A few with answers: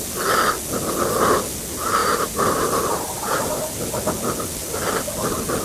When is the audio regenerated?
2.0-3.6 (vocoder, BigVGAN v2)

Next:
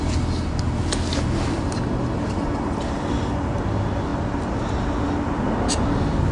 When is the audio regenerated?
none